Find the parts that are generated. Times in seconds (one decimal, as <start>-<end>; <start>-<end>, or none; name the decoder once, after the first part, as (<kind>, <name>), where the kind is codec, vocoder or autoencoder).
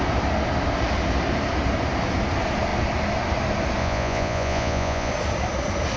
3.8-5.1 (vocoder, Vocos)